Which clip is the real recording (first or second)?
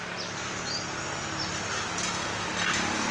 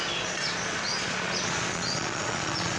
first